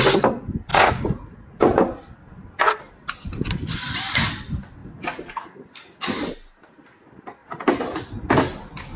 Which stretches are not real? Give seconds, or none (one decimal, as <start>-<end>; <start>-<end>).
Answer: 0.7-1.6; 4.8-5.7